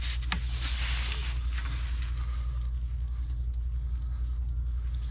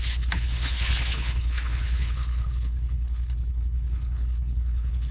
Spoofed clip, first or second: second